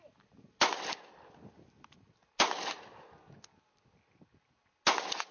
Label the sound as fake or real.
real